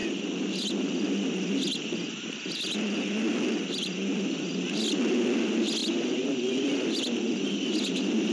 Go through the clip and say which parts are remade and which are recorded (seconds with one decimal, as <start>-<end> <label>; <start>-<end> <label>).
0.0-0.6 remade; 0.6-8.3 recorded